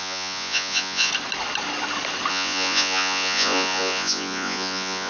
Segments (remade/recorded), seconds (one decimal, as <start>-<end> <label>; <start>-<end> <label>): 0.0-1.1 remade; 1.1-2.3 recorded; 2.3-5.1 remade